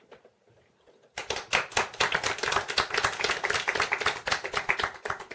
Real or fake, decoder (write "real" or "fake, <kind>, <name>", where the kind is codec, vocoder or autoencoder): real